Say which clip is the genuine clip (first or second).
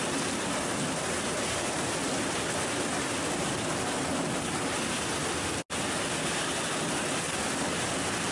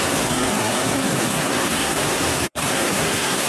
first